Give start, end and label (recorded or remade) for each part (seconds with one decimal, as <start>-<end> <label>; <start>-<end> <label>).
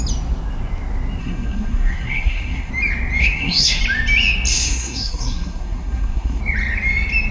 0.0-1.2 recorded; 1.2-2.7 remade; 2.7-3.2 recorded; 3.2-3.8 remade; 3.8-4.5 recorded; 4.5-6.4 remade; 6.4-7.3 recorded